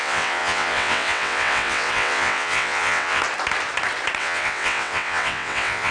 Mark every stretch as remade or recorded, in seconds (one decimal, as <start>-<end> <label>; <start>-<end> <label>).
0.0-3.2 remade; 3.2-4.2 recorded; 4.2-5.9 remade

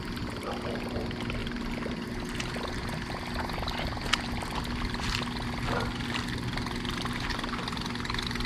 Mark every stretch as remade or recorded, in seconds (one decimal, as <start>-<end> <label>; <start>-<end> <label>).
0.0-8.5 recorded

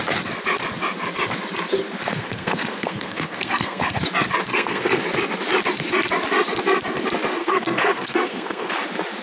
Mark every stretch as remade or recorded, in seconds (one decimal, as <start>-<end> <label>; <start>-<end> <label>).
0.0-2.1 recorded; 2.1-4.0 remade; 4.0-4.5 recorded; 4.5-5.0 remade; 5.0-7.4 recorded; 7.4-8.7 remade; 8.7-9.2 recorded

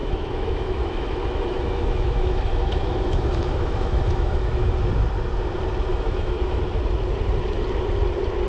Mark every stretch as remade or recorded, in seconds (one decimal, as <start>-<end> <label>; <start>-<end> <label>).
0.0-4.7 remade; 4.7-5.9 recorded; 5.9-6.6 remade; 6.6-8.5 recorded

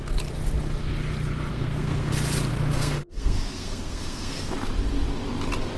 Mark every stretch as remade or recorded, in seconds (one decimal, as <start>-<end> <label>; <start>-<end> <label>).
0.0-1.5 recorded; 1.5-2.1 remade; 2.1-2.5 recorded; 2.5-4.5 remade; 4.5-5.8 recorded

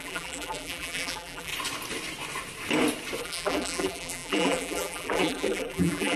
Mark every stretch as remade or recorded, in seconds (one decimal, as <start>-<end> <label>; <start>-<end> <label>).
0.0-1.5 remade; 1.5-3.2 recorded; 3.2-6.2 remade